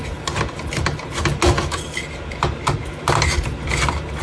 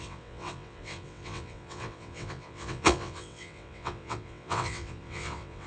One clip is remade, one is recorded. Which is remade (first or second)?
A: second